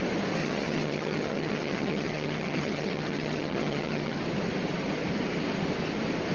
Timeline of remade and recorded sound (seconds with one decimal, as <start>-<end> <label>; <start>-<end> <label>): 0.0-0.4 recorded; 0.4-4.2 remade; 4.2-6.3 recorded